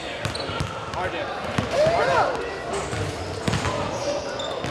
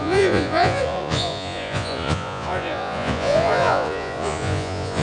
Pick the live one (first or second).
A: first